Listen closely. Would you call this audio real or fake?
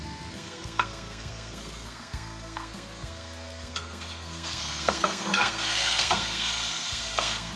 fake